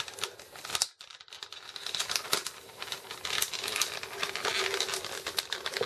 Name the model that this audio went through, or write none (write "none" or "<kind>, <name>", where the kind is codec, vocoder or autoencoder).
none